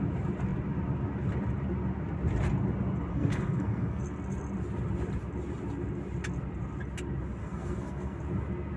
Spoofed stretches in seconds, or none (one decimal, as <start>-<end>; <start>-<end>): 3.1-4.0; 7.4-8.2